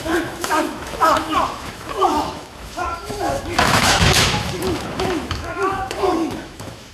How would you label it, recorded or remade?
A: remade